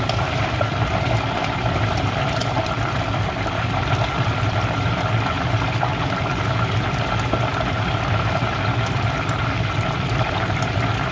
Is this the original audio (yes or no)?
no